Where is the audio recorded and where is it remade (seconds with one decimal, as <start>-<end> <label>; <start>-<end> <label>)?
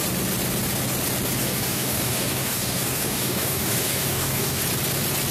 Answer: 0.0-1.4 recorded; 1.4-4.6 remade; 4.6-5.3 recorded